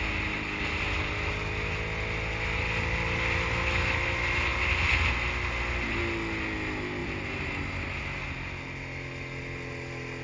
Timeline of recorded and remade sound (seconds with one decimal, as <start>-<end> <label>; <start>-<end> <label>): 0.0-10.2 recorded